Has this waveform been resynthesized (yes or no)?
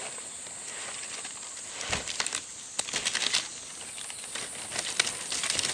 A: no